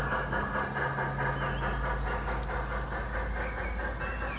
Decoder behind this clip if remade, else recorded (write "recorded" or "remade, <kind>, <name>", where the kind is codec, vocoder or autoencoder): recorded